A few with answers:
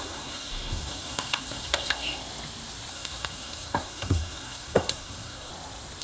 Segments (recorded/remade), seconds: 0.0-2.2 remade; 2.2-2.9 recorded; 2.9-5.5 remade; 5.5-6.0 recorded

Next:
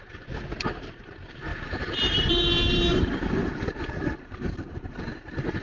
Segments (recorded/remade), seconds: 0.0-1.5 recorded; 1.5-4.9 remade; 4.9-5.6 recorded

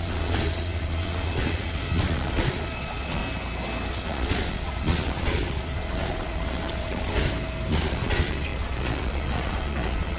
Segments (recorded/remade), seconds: 0.0-3.2 remade; 3.2-3.9 recorded; 3.9-7.1 remade; 7.1-7.7 recorded; 7.7-10.2 remade

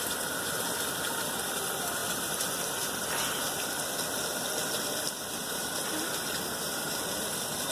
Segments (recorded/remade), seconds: 0.0-7.7 recorded

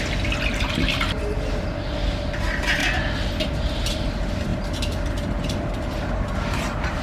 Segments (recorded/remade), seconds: 0.0-7.0 recorded